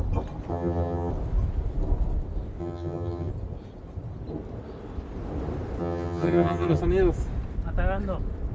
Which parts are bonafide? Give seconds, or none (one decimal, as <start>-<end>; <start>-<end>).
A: 0.0-0.5; 1.1-2.6; 3.3-5.8; 6.8-8.5